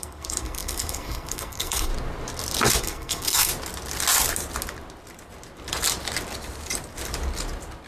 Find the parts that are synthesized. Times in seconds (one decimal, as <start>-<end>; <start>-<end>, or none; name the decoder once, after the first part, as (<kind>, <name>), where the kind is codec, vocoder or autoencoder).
0.0-1.9 (codec, SNAC); 2.8-3.5

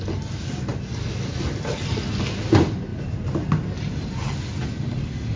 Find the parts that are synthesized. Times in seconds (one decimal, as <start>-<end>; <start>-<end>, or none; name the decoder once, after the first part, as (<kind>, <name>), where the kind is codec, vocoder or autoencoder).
none

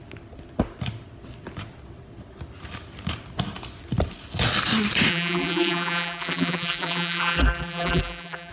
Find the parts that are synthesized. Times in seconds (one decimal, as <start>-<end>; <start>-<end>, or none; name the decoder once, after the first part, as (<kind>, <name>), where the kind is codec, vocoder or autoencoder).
5.1-8.5 (vocoder, BigVGAN v2)

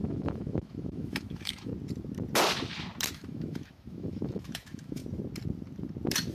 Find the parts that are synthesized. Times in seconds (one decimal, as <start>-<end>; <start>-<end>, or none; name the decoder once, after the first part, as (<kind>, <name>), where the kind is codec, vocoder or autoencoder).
0.0-1.7 (autoencoder, DAC-VAE); 3.1-5.0